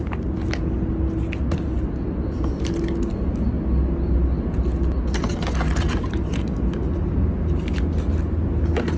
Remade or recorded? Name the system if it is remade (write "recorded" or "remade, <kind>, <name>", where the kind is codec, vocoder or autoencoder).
recorded